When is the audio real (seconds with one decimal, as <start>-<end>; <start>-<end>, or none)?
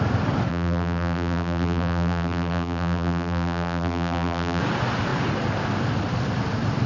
0.0-0.5; 4.6-6.9